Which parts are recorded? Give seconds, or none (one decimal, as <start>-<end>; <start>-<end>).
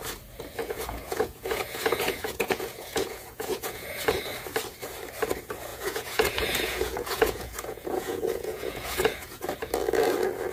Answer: 0.0-0.6; 4.2-5.7; 9.4-10.5